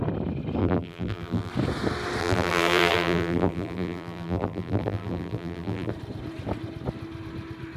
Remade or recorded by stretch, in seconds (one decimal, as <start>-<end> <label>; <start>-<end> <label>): 0.0-0.6 recorded; 0.6-1.5 remade; 1.5-2.2 recorded; 2.2-5.9 remade; 5.9-7.8 recorded